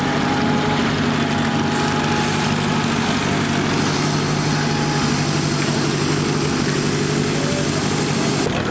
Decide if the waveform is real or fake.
real